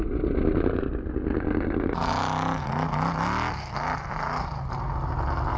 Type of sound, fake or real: real